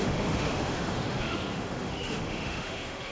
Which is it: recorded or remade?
remade